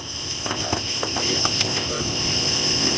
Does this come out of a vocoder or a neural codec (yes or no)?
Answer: yes